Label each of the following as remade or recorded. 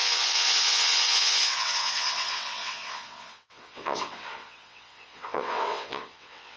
remade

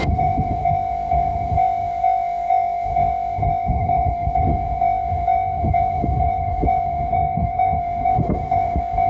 remade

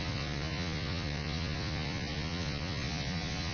remade